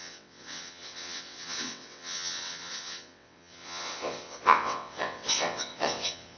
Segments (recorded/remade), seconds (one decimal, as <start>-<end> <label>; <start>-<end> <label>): 0.0-6.4 remade